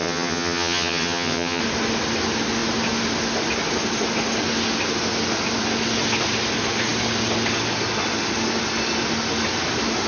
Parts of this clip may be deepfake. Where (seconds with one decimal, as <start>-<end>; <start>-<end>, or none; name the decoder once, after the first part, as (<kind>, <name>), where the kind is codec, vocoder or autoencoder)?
0.0-1.6 (vocoder, HiFi-GAN)